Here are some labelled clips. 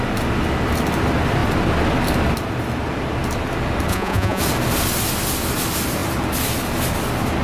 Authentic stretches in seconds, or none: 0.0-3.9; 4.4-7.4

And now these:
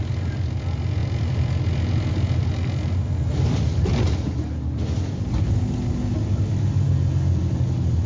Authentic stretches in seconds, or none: 0.0-8.1

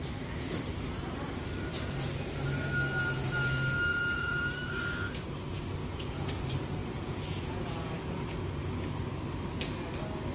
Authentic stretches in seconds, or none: 0.0-3.9; 4.5-5.8; 6.3-6.8; 7.9-10.3